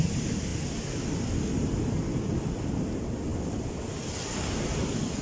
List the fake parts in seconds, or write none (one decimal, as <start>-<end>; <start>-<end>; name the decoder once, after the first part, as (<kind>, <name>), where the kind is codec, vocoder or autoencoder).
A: 3.3-4.1 (vocoder, BigVGAN v2)